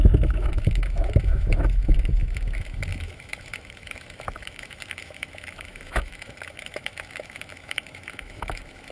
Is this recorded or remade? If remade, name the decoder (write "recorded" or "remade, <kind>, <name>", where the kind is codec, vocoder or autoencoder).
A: remade, autoencoder, DAC-VAE